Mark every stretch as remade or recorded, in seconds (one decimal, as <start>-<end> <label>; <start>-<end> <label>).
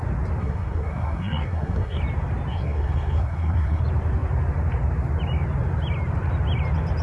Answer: 0.0-0.4 recorded; 0.4-2.0 remade; 2.0-2.5 recorded; 2.5-3.8 remade; 3.8-7.0 recorded